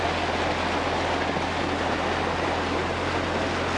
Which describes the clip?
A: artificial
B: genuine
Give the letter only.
B